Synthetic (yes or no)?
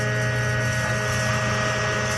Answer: no